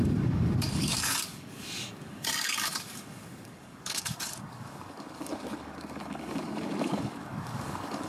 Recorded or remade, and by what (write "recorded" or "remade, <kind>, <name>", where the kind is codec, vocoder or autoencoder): remade, codec, DAC